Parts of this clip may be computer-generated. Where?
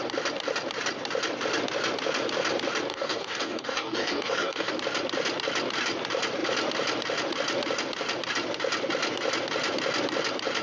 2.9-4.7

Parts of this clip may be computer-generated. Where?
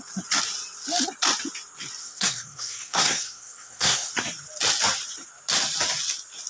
2.0-4.1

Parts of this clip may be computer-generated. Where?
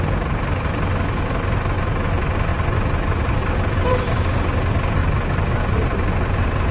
2.5-4.4; 5.0-6.7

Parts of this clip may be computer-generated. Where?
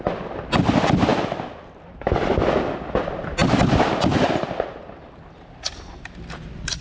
none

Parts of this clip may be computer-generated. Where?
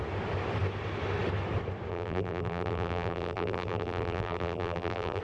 1.9-5.2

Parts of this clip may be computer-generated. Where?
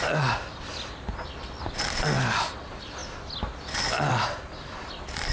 none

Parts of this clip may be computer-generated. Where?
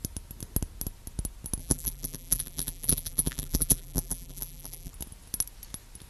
1.6-4.9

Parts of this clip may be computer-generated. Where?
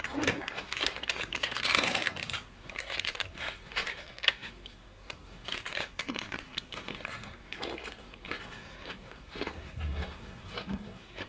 0.0-11.3